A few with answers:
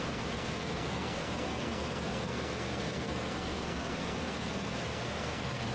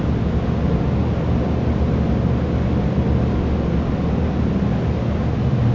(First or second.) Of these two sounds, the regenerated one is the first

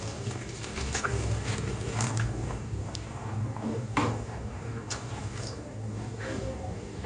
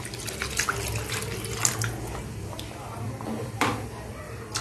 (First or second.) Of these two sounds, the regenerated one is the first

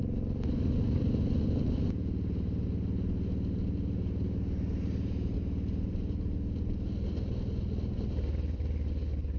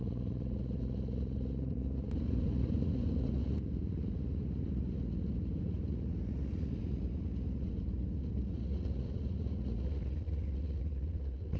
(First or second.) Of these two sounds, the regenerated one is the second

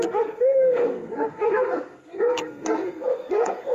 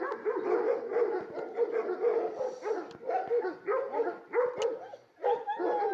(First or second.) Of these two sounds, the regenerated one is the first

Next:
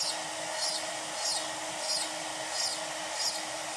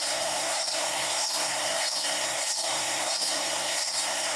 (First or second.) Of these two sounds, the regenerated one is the second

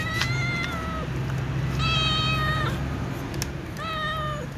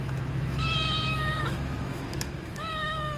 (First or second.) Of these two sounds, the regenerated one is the second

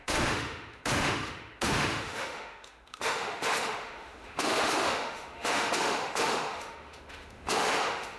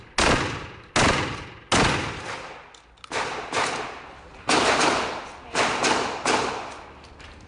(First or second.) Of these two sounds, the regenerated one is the first